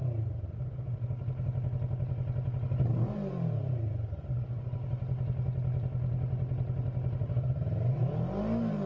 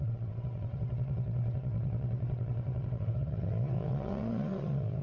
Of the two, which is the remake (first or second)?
second